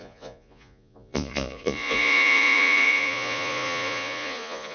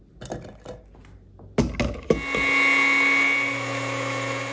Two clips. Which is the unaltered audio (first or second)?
second